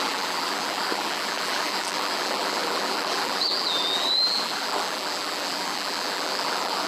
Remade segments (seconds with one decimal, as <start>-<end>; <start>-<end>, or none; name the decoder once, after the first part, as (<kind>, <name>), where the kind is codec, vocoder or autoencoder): 0.0-6.9 (vocoder, BigVGAN v2)